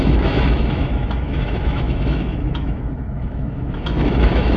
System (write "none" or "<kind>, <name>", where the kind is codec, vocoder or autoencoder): autoencoder, DAC-VAE